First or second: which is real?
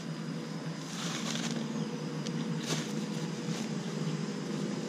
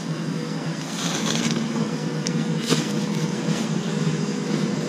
first